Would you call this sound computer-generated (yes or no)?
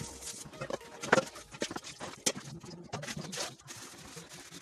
no